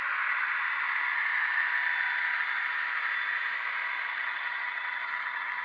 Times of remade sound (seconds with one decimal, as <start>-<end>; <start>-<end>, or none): 4.1-5.6

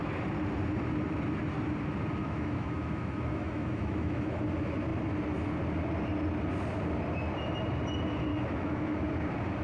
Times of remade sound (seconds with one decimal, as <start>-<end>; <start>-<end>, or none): 2.2-4.4; 8.3-9.0

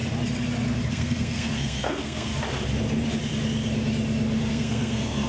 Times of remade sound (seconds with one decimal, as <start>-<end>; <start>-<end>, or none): 0.9-2.3; 4.5-5.3

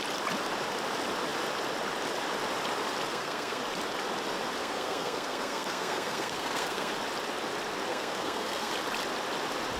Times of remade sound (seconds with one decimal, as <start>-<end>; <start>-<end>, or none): 3.1-3.6; 4.6-6.9; 7.9-8.7

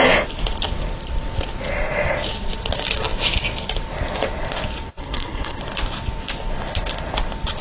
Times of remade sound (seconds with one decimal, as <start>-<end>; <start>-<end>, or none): 5.0-5.6